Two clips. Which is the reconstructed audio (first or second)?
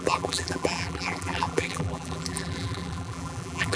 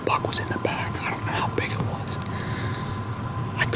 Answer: first